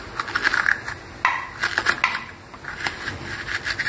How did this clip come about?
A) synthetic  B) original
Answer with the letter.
B